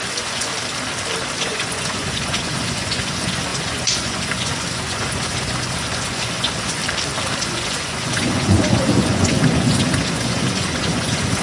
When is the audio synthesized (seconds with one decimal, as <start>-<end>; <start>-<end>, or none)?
0.0-0.5; 1.4-6.8; 7.4-11.4